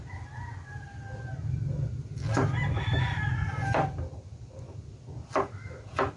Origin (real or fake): real